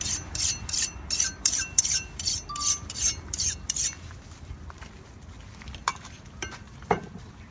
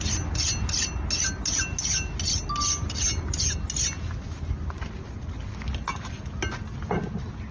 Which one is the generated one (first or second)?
first